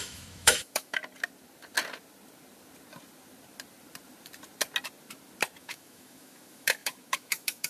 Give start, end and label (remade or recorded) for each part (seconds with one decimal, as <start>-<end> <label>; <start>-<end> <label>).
0.0-1.0 remade; 1.0-5.6 recorded; 5.6-7.7 remade